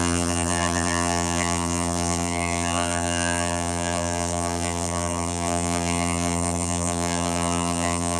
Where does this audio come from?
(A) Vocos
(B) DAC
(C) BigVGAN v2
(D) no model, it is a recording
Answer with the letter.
C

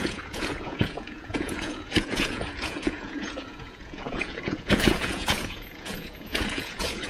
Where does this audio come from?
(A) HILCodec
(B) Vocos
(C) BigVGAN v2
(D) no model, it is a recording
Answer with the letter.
B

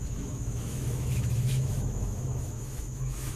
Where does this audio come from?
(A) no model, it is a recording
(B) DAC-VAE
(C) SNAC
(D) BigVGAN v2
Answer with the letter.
B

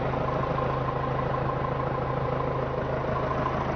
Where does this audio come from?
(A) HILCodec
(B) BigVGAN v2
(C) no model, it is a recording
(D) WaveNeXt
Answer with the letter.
C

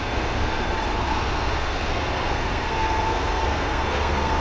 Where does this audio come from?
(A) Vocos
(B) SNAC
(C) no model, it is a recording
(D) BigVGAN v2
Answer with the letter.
B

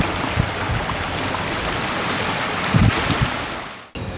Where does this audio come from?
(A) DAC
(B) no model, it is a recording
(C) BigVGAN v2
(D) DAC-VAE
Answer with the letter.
B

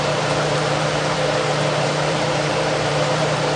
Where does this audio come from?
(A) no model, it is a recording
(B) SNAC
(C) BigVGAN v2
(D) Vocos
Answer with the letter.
C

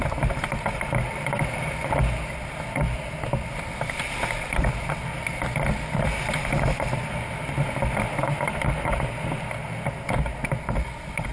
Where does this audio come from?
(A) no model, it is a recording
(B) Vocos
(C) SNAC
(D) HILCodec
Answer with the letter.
A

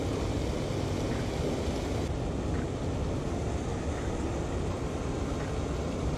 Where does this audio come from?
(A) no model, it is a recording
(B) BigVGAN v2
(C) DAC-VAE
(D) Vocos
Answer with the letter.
A